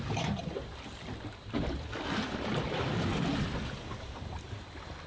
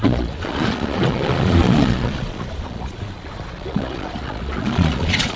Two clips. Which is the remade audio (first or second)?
second